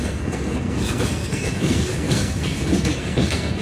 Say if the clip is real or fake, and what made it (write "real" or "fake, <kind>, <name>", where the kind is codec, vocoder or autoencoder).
fake, codec, SNAC